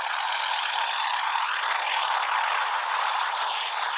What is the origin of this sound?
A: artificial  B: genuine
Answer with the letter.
B